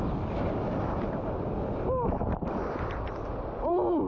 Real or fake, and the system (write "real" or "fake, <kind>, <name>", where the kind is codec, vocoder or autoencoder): real